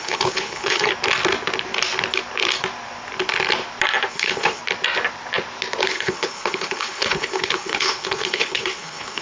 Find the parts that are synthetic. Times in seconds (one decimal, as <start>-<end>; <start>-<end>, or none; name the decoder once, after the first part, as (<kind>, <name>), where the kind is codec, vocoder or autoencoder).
0.0-0.9 (codec, HILCodec); 4.1-4.6; 5.9-9.2